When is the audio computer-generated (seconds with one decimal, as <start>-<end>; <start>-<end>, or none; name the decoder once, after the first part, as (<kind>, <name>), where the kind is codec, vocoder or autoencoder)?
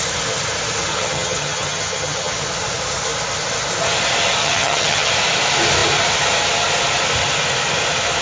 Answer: 0.9-2.3 (vocoder, HiFi-GAN); 4.4-5.1